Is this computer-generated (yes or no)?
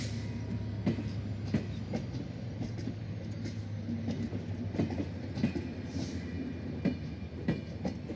no